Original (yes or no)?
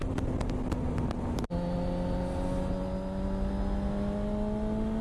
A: yes